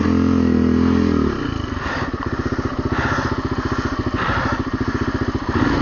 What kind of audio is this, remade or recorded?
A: recorded